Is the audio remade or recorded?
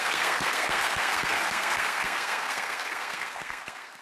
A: remade